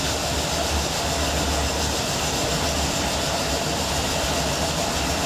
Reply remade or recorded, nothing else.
recorded